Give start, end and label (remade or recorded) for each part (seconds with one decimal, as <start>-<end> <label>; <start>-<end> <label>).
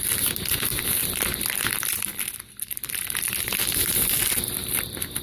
0.0-5.2 recorded